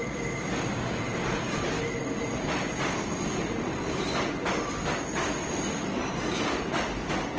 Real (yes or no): yes